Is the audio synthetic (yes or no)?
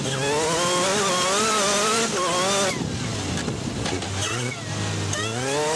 no